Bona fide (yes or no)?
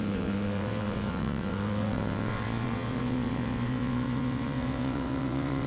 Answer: no